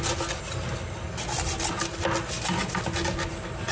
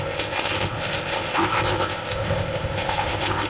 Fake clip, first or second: second